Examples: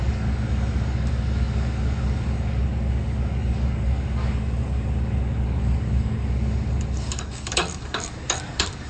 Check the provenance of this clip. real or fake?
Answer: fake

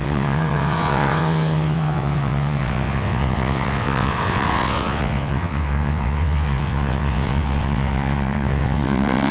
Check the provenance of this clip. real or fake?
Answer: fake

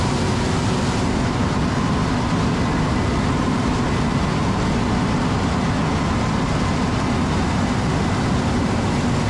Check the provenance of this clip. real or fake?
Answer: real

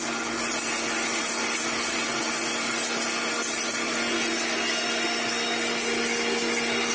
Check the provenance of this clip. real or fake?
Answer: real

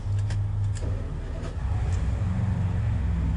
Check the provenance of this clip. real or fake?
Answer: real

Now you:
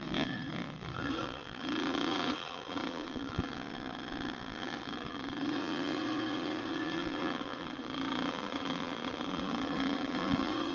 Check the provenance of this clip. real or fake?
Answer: fake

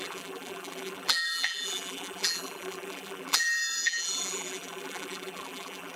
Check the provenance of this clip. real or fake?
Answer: fake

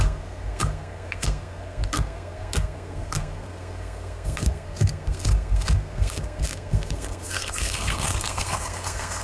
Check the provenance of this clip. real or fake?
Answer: fake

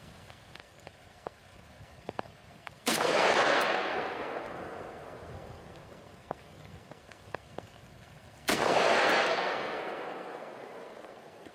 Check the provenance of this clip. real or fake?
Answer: fake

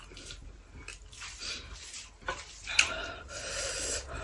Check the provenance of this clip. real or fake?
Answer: fake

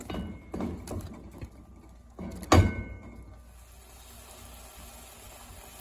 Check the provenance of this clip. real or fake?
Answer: real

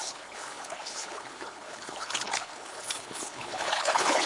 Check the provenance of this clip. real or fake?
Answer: fake